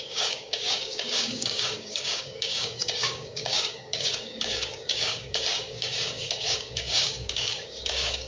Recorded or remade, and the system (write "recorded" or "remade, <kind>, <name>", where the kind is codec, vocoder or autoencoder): remade, codec, DAC